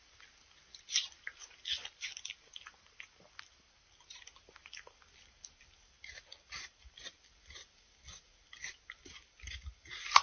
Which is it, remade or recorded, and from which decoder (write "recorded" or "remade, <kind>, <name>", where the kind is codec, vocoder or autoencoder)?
recorded